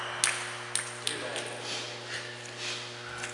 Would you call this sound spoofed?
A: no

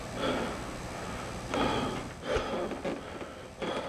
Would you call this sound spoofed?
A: no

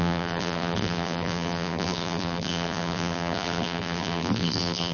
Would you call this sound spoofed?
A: yes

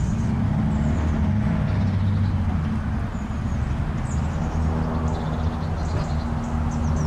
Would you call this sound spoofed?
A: no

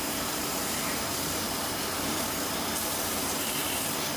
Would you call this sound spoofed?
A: yes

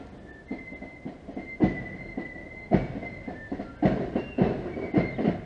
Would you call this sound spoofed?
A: no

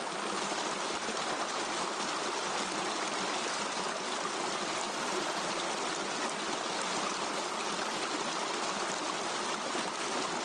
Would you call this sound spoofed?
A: no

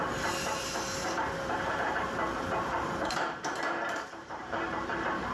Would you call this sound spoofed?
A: yes